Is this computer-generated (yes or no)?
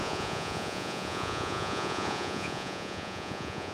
yes